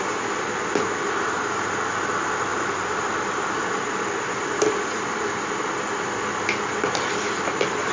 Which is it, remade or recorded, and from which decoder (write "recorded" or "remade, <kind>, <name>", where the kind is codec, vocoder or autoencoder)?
recorded